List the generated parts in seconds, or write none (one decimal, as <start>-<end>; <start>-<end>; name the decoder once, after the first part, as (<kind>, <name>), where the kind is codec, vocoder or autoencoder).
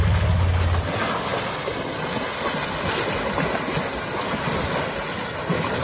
none